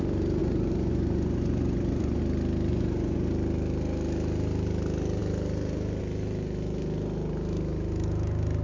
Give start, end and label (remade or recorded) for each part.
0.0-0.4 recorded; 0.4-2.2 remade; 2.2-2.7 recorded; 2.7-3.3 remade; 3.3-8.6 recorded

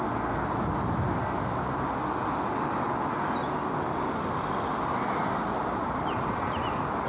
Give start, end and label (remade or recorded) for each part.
0.0-7.1 recorded

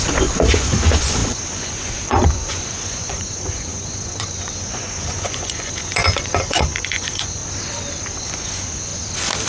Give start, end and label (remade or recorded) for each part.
0.0-7.4 remade; 7.4-8.2 recorded; 8.2-8.9 remade; 8.9-9.5 recorded

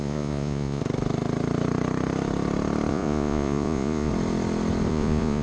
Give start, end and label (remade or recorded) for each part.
0.0-0.8 remade; 0.8-2.9 recorded; 2.9-4.1 remade; 4.1-4.9 recorded; 4.9-5.4 remade

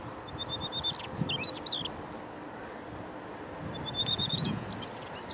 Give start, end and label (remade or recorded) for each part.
0.0-4.0 recorded; 4.0-4.7 remade; 4.7-5.3 recorded

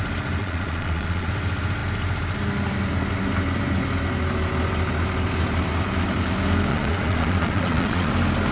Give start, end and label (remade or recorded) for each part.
0.0-0.4 recorded; 0.4-1.3 remade; 1.3-6.7 recorded; 6.7-8.1 remade; 8.1-8.5 recorded